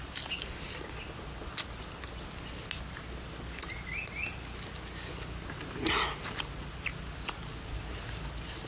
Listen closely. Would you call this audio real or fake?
real